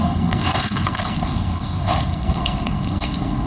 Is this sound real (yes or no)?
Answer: no